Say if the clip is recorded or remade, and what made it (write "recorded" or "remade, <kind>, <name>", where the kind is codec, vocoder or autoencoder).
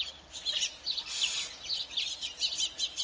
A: recorded